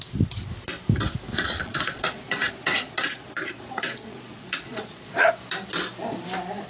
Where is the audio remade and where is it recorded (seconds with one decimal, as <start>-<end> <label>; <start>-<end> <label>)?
0.0-1.3 recorded; 1.3-5.3 remade; 5.3-6.7 recorded